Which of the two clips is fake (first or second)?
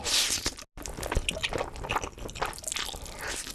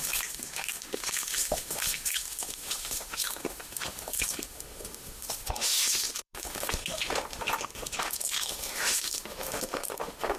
second